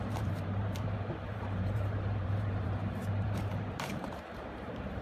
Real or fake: fake